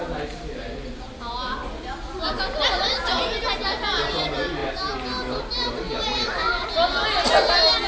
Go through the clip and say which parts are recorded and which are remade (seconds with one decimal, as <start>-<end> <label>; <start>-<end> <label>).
0.0-7.9 recorded